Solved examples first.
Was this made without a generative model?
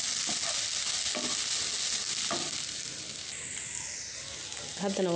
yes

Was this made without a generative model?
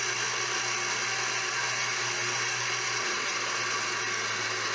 yes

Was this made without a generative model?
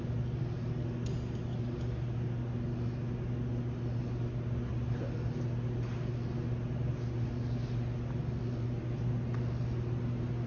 yes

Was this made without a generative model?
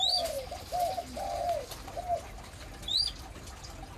yes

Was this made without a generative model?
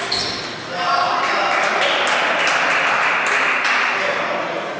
yes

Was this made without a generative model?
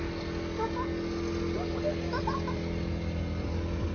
yes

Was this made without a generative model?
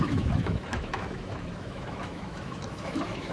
no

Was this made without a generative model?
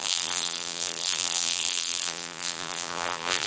no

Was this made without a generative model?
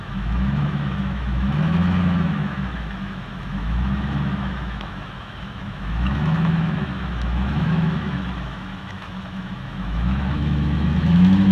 no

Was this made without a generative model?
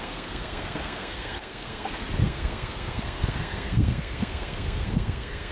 no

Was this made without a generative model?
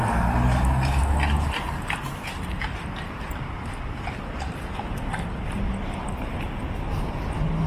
yes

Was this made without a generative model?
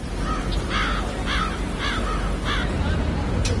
yes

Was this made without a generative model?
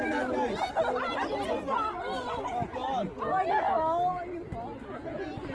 yes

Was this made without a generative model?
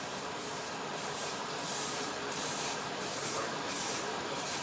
no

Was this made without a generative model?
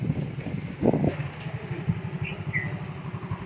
yes